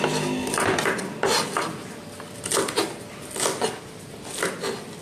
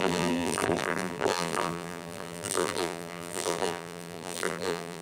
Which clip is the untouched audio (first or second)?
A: first